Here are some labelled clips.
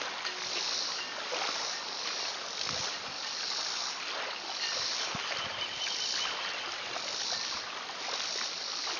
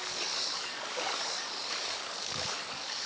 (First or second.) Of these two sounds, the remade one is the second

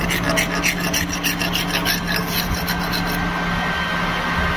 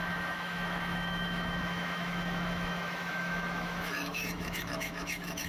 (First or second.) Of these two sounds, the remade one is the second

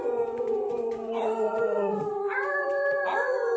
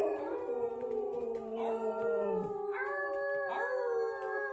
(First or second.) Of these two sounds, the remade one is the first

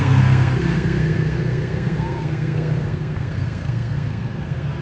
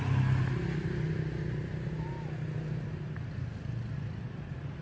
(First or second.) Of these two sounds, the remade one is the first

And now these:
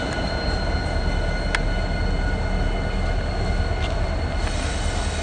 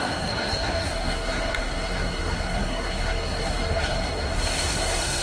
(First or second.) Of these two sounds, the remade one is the second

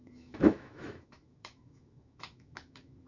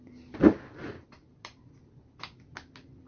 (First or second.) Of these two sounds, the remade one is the first